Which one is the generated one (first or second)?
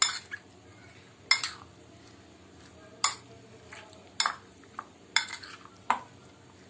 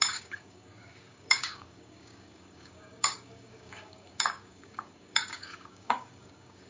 second